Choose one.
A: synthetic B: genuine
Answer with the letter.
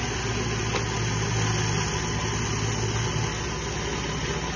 B